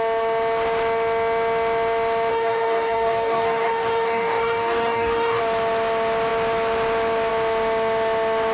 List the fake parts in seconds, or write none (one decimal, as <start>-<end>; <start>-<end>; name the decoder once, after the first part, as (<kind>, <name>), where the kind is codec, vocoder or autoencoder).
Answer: 2.3-5.4 (codec, DAC)

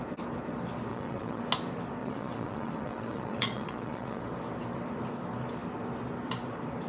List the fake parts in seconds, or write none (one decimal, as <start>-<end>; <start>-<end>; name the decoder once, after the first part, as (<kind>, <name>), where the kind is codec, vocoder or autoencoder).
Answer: 0.9-1.4 (vocoder, Vocos); 2.0-4.2

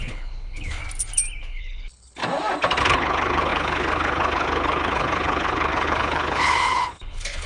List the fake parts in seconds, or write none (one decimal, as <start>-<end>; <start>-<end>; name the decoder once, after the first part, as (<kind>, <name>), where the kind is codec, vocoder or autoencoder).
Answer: 0.0-0.8 (codec, HILCodec); 1.4-2.2; 2.8-7.5

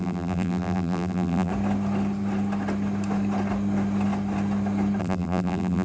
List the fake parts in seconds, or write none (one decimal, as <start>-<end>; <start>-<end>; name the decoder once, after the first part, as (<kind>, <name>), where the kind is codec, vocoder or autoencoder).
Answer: 0.0-1.5 (vocoder, BigVGAN v2); 5.0-5.8

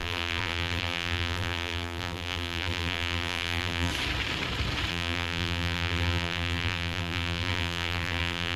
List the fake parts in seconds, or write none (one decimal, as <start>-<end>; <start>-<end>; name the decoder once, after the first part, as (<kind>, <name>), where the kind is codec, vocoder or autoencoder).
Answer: 0.0-3.9 (vocoder, BigVGAN v2); 4.9-8.6

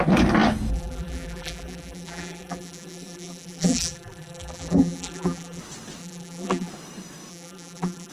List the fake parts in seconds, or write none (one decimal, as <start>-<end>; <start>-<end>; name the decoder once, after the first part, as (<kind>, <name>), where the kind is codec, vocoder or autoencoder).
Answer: 0.7-5.6 (vocoder, BigVGAN v2); 6.0-6.7; 7.3-8.1